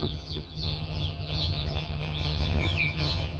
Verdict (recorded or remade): remade